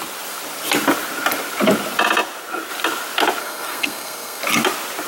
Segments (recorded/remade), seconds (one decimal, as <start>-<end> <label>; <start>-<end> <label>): 0.0-3.4 recorded; 3.4-4.4 remade; 4.4-5.1 recorded